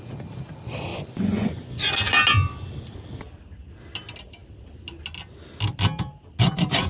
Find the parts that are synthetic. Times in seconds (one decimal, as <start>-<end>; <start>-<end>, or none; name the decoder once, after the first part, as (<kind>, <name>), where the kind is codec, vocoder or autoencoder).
0.9-1.8 (vocoder, Vocos)